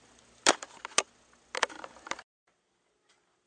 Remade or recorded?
recorded